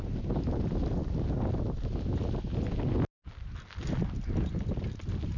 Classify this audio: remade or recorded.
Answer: recorded